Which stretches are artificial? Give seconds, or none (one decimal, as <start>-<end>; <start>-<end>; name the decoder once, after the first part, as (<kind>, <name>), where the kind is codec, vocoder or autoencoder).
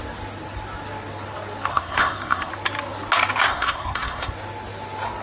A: 1.7-2.5 (codec, SNAC); 3.5-4.3